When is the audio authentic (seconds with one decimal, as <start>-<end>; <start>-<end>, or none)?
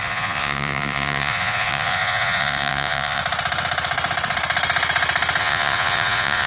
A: 3.2-5.4